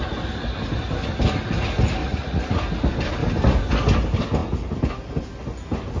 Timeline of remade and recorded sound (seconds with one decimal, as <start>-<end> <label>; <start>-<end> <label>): 0.0-2.0 recorded; 2.0-2.6 remade; 2.6-6.0 recorded